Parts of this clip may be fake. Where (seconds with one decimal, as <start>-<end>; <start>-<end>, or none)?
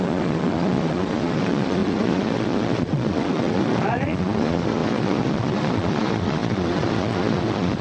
0.0-7.8